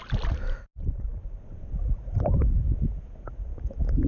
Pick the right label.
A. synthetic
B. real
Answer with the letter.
B